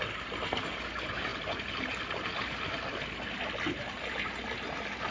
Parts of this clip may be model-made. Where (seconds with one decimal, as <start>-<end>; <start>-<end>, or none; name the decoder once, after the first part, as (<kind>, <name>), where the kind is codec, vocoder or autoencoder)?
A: none